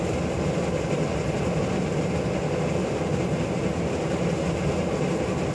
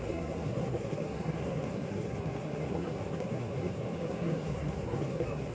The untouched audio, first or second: first